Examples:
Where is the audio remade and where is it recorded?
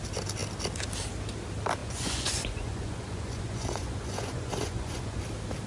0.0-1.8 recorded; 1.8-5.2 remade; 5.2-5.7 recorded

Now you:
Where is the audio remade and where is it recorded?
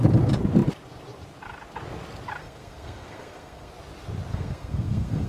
0.0-2.4 recorded; 2.4-3.7 remade; 3.7-4.3 recorded; 4.3-5.3 remade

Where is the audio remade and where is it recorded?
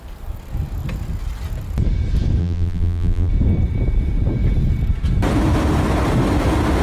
0.0-2.4 recorded; 2.4-3.3 remade; 3.3-6.8 recorded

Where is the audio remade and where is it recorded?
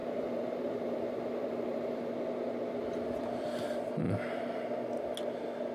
0.0-2.1 remade; 2.1-5.7 recorded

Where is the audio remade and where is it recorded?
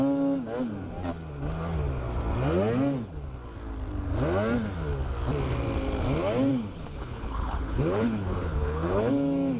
0.0-6.5 recorded; 6.5-9.1 remade; 9.1-9.6 recorded